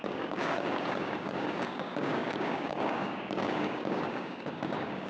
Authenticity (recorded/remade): remade